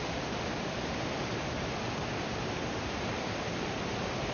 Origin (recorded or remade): remade